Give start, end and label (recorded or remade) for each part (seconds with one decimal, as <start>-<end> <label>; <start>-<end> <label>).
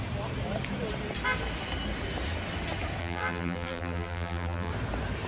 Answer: 0.0-3.0 recorded; 3.0-4.7 remade; 4.7-5.3 recorded